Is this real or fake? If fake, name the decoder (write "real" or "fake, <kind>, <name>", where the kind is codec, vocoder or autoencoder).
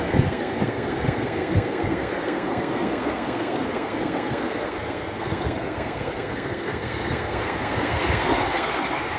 fake, codec, SNAC